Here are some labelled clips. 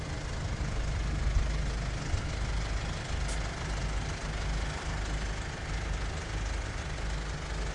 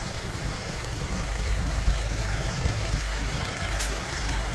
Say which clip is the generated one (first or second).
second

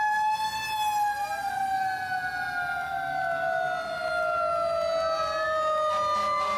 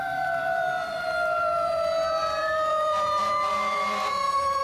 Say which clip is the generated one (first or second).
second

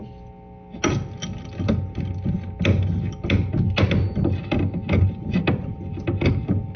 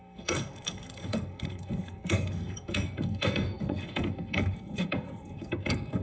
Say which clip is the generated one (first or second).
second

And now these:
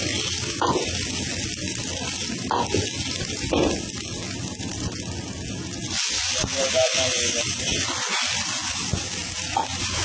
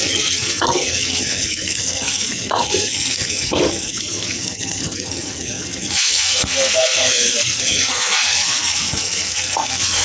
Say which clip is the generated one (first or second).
second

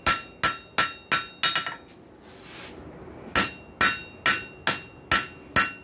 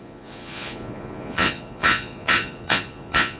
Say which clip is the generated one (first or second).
second